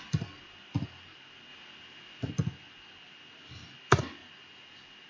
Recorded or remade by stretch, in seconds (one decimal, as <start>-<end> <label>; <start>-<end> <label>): 0.0-5.1 recorded